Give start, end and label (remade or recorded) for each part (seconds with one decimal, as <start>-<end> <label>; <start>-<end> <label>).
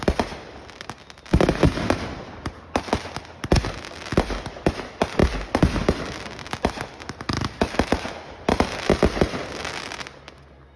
0.0-10.8 recorded